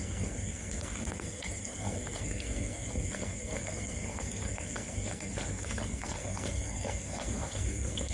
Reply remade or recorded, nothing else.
remade